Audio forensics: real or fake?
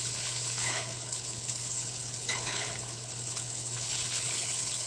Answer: fake